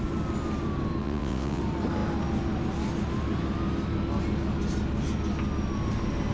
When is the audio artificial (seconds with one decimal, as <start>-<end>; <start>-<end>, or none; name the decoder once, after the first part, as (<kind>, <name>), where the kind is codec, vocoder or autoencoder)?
1.0-1.6 (vocoder, WaveNeXt)